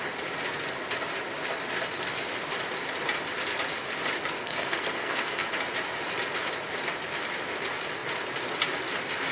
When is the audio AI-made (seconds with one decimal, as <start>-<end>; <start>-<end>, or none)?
4.4-5.5